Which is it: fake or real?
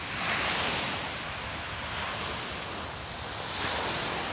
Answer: real